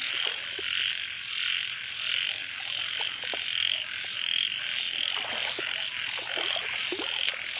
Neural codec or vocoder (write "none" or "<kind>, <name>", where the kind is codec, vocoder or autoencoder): none